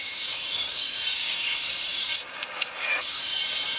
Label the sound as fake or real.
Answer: fake